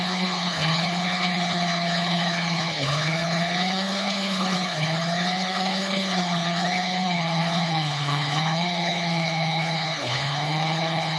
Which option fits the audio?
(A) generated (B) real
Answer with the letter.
A